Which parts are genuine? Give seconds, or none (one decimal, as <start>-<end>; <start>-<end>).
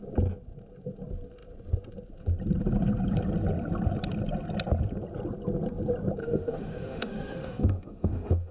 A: 0.0-6.2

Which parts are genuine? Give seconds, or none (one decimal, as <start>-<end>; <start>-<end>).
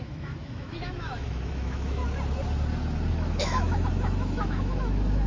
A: 2.0-3.1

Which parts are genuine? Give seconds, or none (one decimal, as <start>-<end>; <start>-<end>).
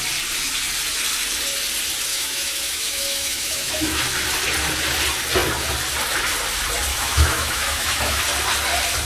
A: 0.0-2.1; 4.0-6.9; 8.2-9.0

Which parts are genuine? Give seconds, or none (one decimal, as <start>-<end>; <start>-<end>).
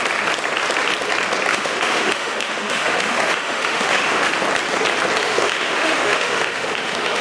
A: 0.0-1.5; 4.3-5.2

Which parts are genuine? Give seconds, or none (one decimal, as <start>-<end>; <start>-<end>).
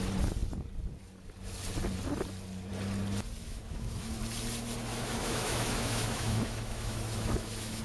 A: 0.0-3.4; 4.2-4.9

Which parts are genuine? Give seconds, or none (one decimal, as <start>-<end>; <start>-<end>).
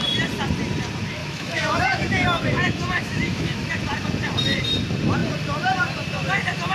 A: 0.0-1.2; 3.7-6.7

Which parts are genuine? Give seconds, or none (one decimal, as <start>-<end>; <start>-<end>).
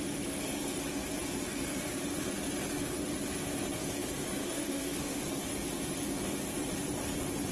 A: 0.0-4.4; 5.2-7.5